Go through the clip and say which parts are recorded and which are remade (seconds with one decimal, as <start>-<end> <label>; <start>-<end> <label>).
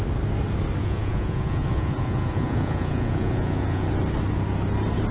0.0-0.8 recorded; 0.8-3.9 remade; 3.9-5.1 recorded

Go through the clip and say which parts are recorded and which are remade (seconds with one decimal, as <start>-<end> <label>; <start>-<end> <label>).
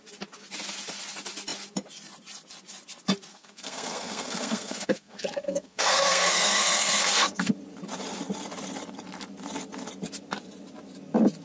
0.0-3.3 recorded; 3.3-7.5 remade; 7.5-11.4 recorded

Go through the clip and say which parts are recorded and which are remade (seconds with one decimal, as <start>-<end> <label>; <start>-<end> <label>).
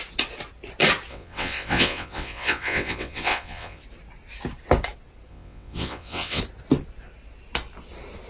0.0-1.1 recorded; 1.1-3.8 remade; 3.8-5.3 recorded; 5.3-6.4 remade; 6.4-8.3 recorded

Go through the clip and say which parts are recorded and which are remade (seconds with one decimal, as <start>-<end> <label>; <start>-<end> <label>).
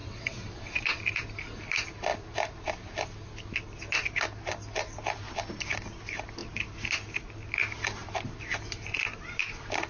0.0-1.0 remade; 1.0-9.9 recorded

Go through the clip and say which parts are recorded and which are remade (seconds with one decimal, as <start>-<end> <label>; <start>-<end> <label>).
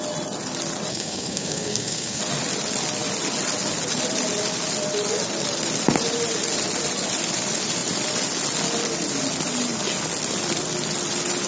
0.0-0.9 recorded; 0.9-2.2 remade; 2.2-11.5 recorded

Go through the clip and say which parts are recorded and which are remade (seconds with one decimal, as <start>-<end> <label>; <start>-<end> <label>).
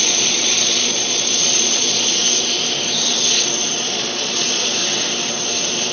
0.0-2.2 remade; 2.2-3.7 recorded; 3.7-4.8 remade; 4.8-5.9 recorded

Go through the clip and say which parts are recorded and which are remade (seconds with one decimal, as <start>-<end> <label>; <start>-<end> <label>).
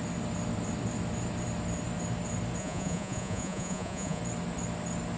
0.0-2.6 recorded; 2.6-4.2 remade; 4.2-5.2 recorded